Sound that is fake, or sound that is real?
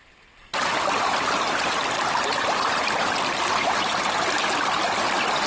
real